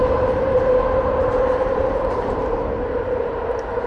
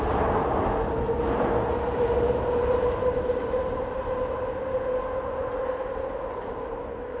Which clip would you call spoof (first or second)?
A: first